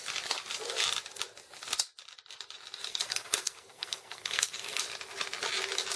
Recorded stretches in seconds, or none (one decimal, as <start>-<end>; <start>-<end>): 0.0-2.9; 4.8-6.0

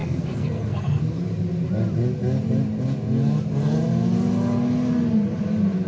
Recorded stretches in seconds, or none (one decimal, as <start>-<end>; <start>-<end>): 1.1-5.9

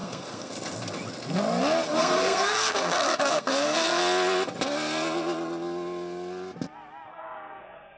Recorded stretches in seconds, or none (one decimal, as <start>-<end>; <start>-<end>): 0.5-2.0; 4.0-7.1